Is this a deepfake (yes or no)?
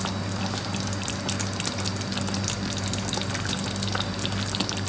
no